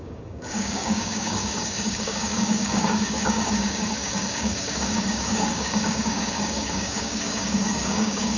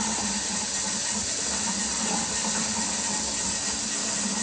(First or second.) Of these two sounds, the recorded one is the second